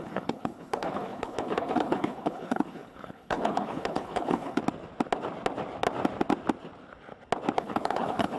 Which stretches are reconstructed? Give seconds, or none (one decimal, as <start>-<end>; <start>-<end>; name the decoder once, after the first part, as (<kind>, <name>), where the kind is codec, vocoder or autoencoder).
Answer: 0.0-4.6 (codec, HILCodec); 7.6-8.4